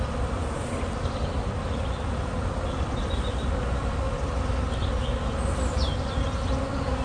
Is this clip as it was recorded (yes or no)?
yes